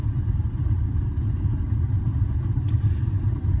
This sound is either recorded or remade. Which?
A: remade